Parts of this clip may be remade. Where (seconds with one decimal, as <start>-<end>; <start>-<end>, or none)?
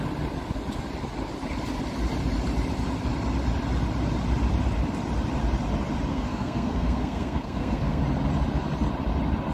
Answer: 6.1-8.0